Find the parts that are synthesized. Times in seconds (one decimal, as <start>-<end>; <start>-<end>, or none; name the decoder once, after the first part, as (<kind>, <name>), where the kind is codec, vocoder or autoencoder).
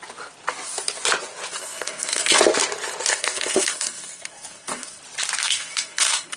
1.5-2.4 (codec, SNAC); 3.1-5.0; 5.4-6.4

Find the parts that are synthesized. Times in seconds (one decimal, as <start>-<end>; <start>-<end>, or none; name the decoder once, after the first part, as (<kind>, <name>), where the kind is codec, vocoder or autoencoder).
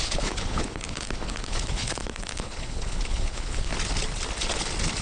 0.0-3.7 (codec, HILCodec)